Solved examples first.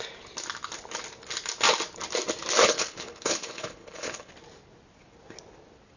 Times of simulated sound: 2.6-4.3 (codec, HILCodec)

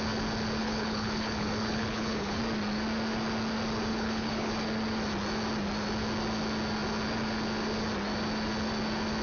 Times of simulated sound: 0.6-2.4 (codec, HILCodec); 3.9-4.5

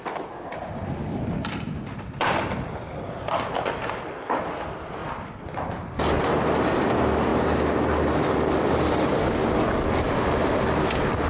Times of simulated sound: 0.0-5.0 (vocoder, BigVGAN v2); 6.2-7.3; 8.1-11.3

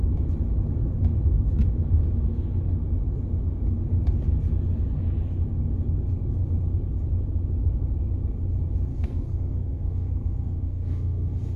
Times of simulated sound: 8.9-11.6 (codec, SNAC)

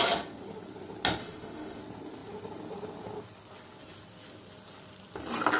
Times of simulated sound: 1.2-1.8 (autoencoder, DAC-VAE)